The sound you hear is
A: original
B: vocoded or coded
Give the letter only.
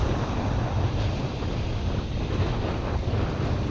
A